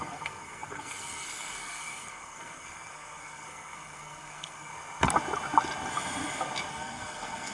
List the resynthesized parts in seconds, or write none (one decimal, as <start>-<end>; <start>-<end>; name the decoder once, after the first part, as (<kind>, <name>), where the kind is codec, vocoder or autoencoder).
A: 0.0-4.7 (codec, SNAC); 6.7-7.5